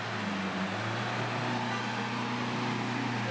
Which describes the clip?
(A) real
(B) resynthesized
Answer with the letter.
A